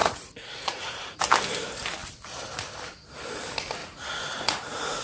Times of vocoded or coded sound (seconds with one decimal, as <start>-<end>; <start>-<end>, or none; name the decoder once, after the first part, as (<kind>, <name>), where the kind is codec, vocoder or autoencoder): 0.0-1.2 (vocoder, Vocos); 3.8-5.0